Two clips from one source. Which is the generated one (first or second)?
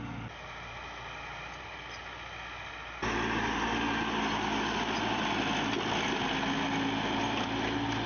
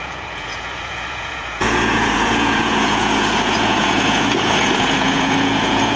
second